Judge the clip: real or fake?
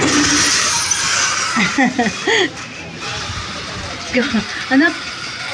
fake